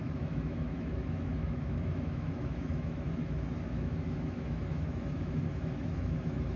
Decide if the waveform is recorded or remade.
remade